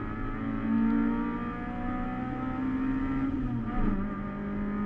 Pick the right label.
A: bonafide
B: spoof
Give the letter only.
A